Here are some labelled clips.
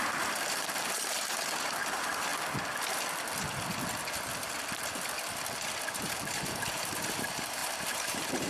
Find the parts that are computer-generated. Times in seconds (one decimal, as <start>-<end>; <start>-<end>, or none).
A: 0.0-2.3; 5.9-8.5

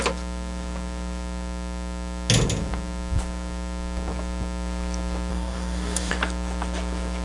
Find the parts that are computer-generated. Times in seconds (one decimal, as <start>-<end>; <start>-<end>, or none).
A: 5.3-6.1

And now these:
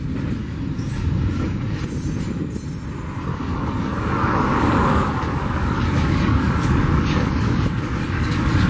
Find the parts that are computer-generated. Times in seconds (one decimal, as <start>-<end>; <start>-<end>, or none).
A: 0.4-1.8; 3.3-8.7

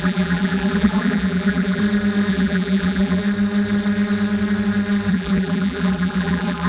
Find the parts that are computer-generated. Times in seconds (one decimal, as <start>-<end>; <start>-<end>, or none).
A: 0.0-1.8; 2.3-3.2; 5.1-6.7

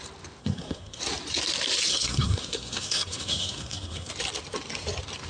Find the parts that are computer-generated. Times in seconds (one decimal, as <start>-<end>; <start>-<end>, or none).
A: 0.4-1.0; 1.9-4.1

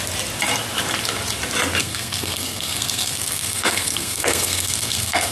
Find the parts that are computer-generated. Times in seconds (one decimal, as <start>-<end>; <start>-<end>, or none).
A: 1.8-5.3

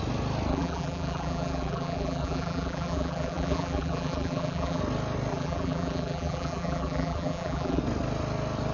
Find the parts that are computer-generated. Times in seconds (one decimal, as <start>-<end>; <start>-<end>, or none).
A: 0.5-4.8; 5.3-7.8

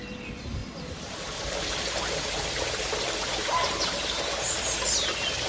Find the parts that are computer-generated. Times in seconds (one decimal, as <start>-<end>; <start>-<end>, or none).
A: none